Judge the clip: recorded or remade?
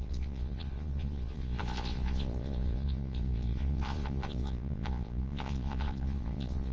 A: remade